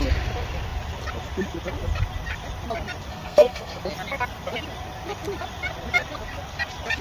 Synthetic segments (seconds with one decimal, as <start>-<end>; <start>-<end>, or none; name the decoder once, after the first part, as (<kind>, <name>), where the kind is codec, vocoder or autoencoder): 3.1-3.8 (codec, SNAC)